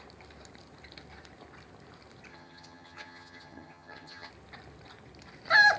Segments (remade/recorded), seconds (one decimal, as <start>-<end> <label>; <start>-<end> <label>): 0.0-2.3 recorded; 2.3-4.3 remade; 4.3-5.8 recorded